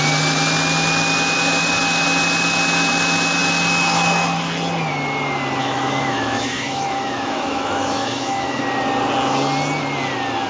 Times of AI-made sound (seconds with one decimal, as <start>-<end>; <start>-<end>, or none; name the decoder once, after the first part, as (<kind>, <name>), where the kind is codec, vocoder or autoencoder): 5.6-8.6 (autoencoder, DAC-VAE)